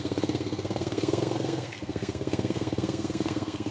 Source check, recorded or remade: remade